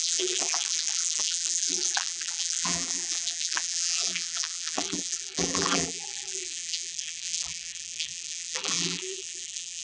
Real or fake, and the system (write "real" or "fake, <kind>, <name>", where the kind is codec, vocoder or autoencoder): fake, vocoder, BigVGAN v2